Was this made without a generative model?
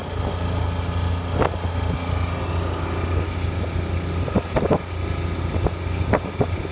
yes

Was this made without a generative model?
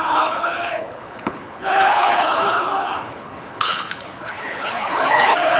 no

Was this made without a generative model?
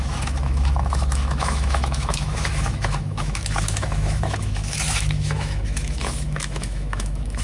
no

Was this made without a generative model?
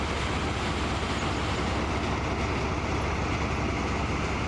yes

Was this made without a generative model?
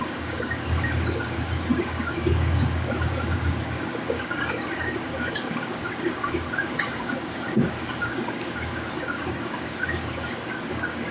no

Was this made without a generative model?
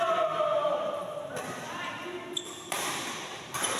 yes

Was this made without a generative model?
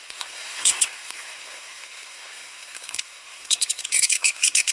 no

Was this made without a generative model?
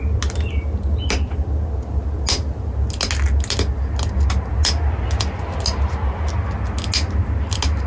yes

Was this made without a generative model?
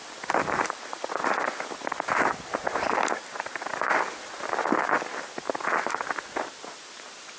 yes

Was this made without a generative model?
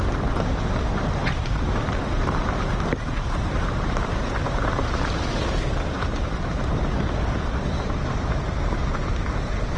no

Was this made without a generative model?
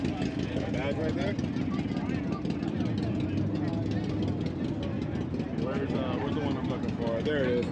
yes